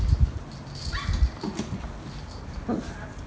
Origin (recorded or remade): recorded